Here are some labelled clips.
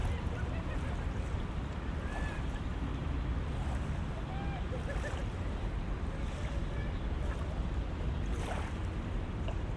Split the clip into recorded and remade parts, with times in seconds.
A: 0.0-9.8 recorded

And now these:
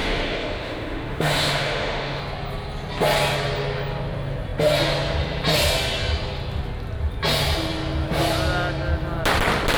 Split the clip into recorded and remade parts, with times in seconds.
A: 0.0-2.2 remade; 2.2-9.8 recorded

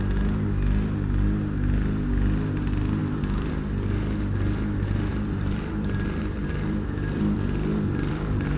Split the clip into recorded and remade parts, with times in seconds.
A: 0.0-3.0 recorded; 3.0-3.5 remade; 3.5-5.1 recorded; 5.1-8.6 remade